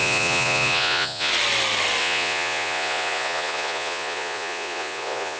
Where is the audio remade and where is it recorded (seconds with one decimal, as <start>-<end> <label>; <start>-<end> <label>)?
0.0-1.3 remade; 1.3-2.0 recorded; 2.0-5.4 remade